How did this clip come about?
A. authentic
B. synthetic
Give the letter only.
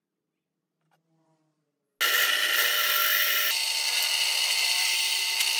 A